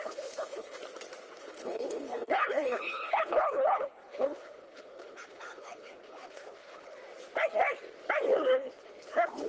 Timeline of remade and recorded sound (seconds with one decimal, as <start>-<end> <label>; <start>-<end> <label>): 0.0-0.8 remade; 0.8-1.4 recorded; 1.4-7.0 remade; 7.0-8.3 recorded; 8.3-9.5 remade